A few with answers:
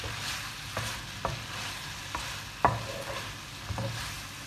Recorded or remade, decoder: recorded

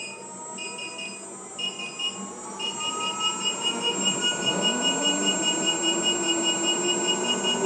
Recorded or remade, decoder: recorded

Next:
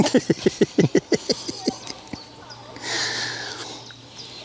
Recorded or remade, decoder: recorded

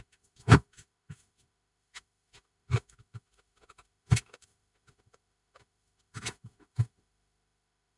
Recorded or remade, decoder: remade, autoencoder, DAC-VAE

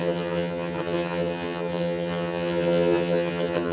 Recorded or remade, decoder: remade, vocoder, HiFi-GAN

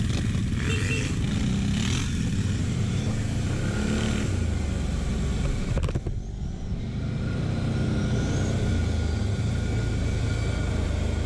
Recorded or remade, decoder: recorded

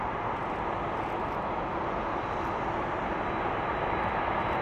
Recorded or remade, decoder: recorded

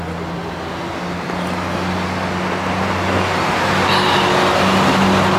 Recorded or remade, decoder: recorded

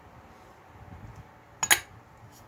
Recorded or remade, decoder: recorded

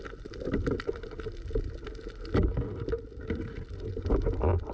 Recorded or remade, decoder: recorded